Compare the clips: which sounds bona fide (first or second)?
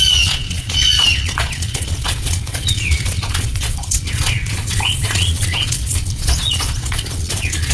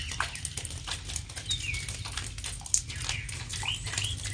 second